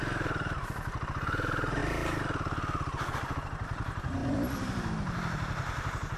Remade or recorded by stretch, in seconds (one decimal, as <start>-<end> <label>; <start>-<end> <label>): 0.0-1.8 remade; 1.8-3.1 recorded; 3.1-6.2 remade